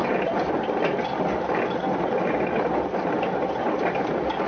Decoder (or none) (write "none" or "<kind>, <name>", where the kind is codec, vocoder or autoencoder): none